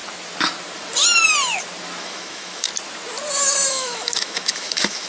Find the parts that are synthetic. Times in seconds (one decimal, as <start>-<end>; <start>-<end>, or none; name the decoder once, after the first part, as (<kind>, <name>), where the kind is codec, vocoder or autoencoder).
2.0-2.7 (autoencoder, DAC-VAE); 3.7-5.1